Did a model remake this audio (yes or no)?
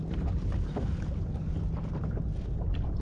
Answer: no